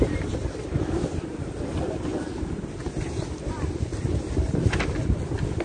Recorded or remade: recorded